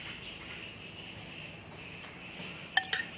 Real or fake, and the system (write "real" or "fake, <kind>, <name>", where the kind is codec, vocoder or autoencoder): real